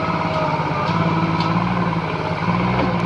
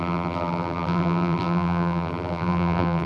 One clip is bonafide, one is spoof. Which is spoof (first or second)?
second